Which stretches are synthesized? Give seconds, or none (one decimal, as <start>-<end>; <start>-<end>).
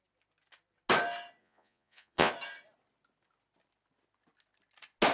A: 1.4-2.3